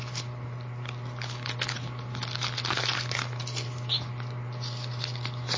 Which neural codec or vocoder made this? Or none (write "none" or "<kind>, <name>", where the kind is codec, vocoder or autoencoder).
none